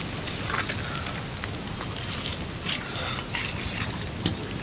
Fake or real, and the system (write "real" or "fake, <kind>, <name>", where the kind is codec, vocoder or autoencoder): real